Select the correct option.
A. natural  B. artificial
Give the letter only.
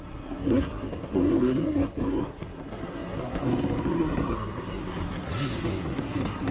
B